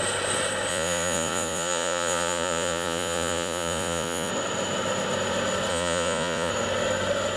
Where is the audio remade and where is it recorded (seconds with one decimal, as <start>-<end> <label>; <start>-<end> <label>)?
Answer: 0.0-0.7 recorded; 0.7-4.3 remade; 4.3-5.7 recorded; 5.7-6.5 remade; 6.5-7.4 recorded